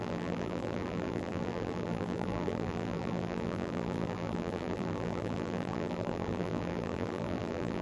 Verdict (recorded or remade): remade